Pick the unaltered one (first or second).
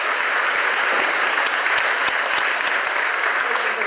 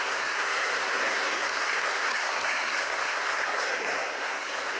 first